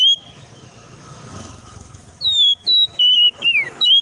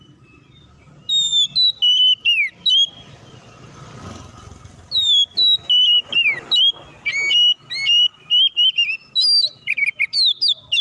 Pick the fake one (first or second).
first